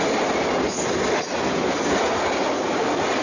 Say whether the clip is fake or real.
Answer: real